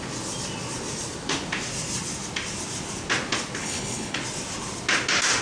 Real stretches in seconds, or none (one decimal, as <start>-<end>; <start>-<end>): 0.0-3.6; 4.2-5.4